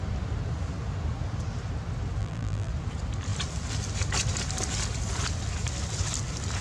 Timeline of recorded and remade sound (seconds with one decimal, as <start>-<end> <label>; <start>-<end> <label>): 0.0-2.2 recorded; 2.2-2.7 remade; 2.7-6.6 recorded

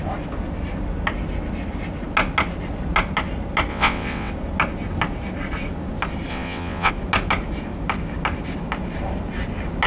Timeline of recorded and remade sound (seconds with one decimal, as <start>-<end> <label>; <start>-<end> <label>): 0.0-3.7 recorded; 3.7-4.3 remade; 4.3-6.3 recorded; 6.3-6.9 remade; 6.9-9.9 recorded

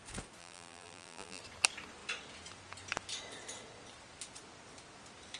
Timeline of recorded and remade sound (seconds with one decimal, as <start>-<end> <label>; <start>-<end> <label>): 0.0-0.4 recorded; 0.4-1.4 remade; 1.4-5.4 recorded

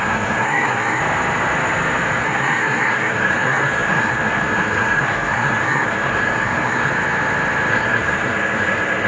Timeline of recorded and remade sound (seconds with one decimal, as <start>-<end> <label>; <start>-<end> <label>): 0.0-1.0 remade; 1.0-2.2 recorded; 2.2-6.9 remade; 6.9-7.7 recorded; 7.7-9.1 remade